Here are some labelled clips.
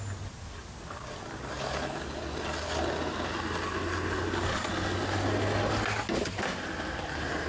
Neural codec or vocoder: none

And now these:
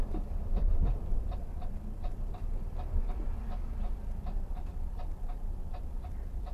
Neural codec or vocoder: vocoder, BigVGAN v2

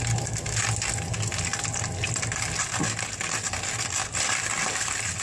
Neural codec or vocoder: none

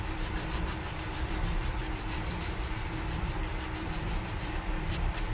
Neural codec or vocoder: vocoder, BigVGAN v2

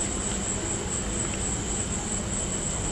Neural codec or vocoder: none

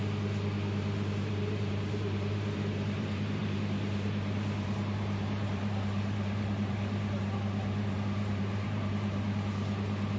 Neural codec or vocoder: vocoder, BigVGAN v2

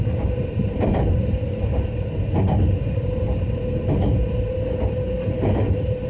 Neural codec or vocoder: vocoder, BigVGAN v2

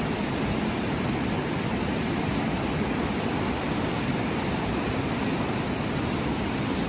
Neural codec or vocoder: vocoder, BigVGAN v2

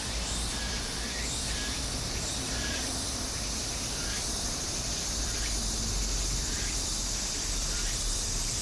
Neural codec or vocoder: vocoder, BigVGAN v2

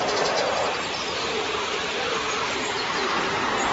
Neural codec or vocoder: none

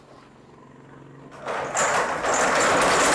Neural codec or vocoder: none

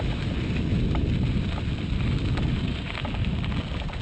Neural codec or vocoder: none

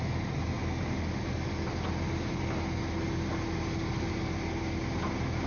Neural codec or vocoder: none